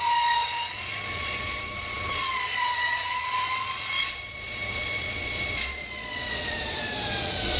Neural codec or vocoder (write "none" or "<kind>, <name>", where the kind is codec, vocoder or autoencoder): vocoder, Vocos